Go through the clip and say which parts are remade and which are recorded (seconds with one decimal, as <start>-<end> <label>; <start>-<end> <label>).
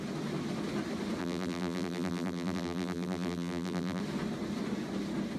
0.0-1.2 recorded; 1.2-4.0 remade; 4.0-5.4 recorded